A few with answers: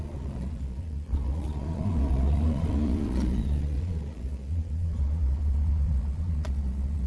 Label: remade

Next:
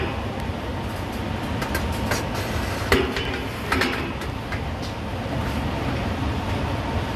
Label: recorded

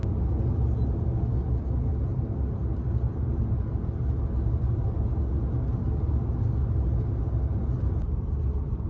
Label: recorded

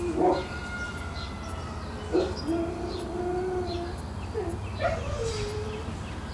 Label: recorded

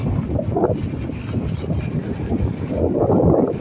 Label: recorded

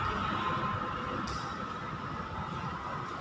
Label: recorded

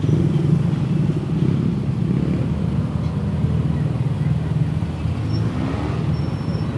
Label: recorded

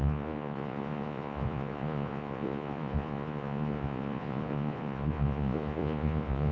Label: remade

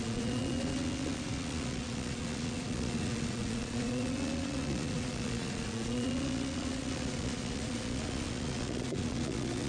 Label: remade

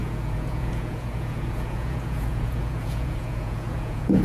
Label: remade